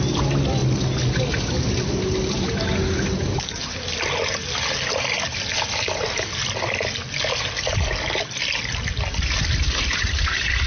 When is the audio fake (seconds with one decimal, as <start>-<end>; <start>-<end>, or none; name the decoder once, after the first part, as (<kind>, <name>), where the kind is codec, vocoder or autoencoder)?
none